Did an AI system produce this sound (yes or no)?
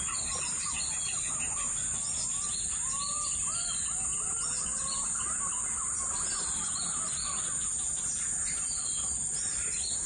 no